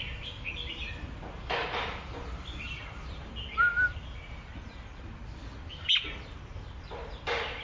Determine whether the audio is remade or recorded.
remade